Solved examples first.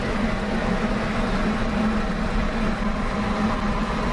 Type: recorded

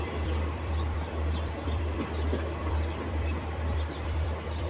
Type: remade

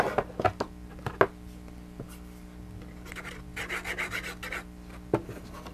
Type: recorded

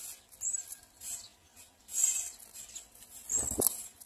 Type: recorded